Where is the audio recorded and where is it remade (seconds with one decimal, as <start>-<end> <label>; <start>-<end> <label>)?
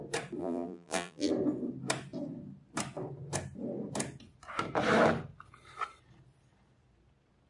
0.0-0.4 recorded; 0.4-1.3 remade; 1.3-7.5 recorded